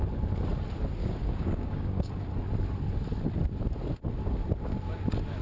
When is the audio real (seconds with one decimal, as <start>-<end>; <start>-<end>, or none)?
0.0-1.0; 2.1-5.4